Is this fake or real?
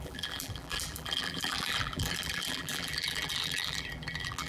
fake